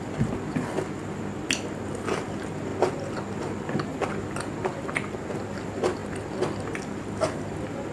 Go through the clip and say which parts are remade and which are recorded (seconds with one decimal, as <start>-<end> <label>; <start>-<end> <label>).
0.0-7.9 recorded